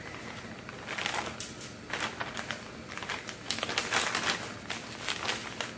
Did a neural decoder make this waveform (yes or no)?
no